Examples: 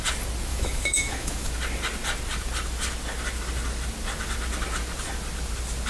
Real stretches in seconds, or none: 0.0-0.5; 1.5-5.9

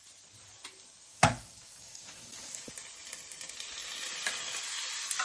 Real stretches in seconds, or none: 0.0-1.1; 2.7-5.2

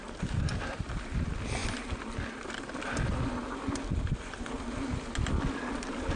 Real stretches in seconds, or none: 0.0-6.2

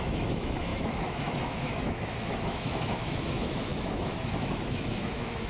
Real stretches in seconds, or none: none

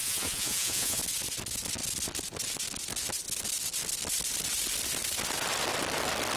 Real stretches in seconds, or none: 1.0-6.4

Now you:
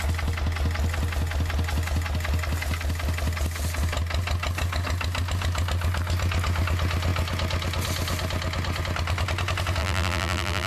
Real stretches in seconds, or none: 0.0-9.8

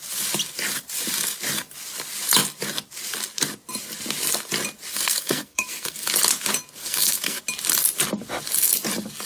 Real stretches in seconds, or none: 0.0-4.9; 6.1-6.8; 7.4-9.3